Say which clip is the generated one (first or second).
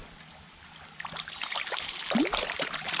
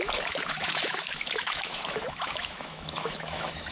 second